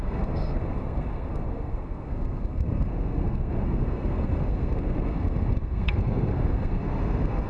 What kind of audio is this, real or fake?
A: fake